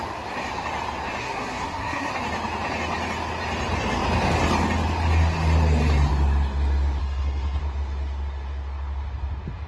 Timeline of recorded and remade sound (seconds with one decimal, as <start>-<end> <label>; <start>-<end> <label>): 0.0-1.2 recorded; 1.2-2.1 remade; 2.1-7.0 recorded; 7.0-7.6 remade; 7.6-9.7 recorded